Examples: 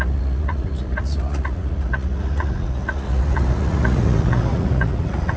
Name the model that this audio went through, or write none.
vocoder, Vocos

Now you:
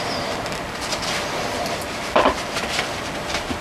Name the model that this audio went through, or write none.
vocoder, BigVGAN v2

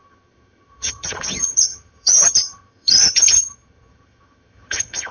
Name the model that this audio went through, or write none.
vocoder, HiFi-GAN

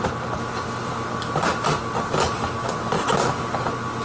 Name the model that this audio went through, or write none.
none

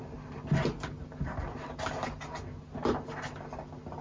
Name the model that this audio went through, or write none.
none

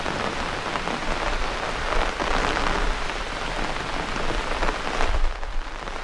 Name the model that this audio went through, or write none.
none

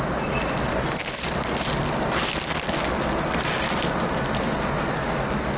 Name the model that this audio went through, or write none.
none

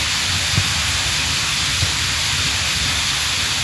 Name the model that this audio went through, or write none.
none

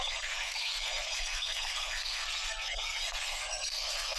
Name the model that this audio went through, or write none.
codec, SNAC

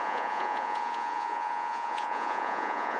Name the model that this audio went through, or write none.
vocoder, Vocos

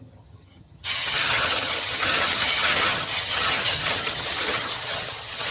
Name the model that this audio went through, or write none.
vocoder, HiFi-GAN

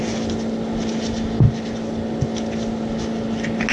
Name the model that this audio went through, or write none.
none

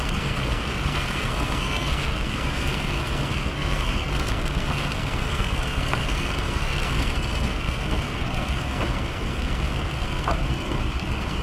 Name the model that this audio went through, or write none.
codec, SNAC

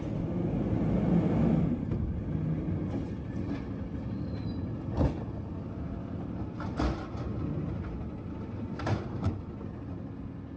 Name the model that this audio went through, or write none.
none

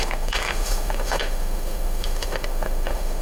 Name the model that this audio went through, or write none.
autoencoder, DAC-VAE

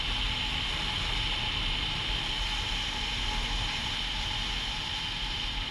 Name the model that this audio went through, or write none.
none